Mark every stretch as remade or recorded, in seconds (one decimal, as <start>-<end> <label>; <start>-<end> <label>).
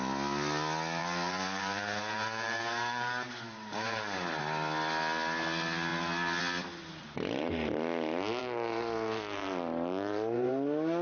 0.0-1.0 recorded; 1.0-4.4 remade; 4.4-8.4 recorded; 8.4-10.5 remade; 10.5-11.0 recorded